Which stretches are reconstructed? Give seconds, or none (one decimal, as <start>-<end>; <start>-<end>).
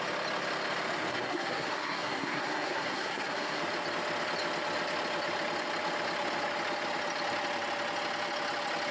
1.1-3.6